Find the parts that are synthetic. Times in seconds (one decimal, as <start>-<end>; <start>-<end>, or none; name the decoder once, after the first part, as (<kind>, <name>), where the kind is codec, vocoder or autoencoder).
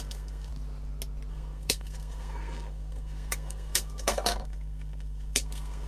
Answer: 0.0-0.5 (codec, SNAC); 1.3-5.9